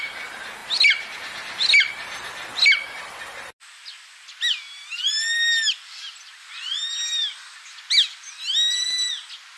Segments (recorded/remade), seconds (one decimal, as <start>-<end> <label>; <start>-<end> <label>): 0.0-9.6 recorded